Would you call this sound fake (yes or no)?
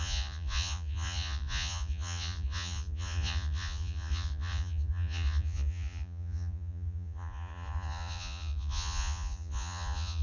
yes